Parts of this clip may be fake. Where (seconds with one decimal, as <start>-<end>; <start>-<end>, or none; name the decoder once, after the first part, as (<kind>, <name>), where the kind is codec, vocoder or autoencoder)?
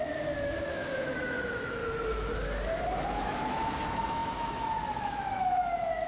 0.0-1.8 (autoencoder, DAC-VAE); 3.0-6.1